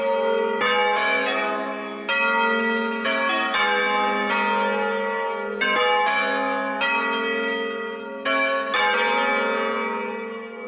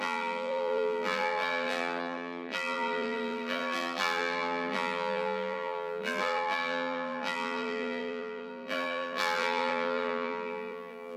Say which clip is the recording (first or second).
first